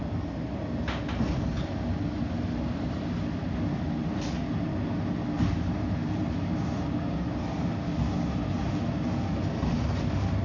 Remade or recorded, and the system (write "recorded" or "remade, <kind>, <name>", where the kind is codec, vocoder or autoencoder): recorded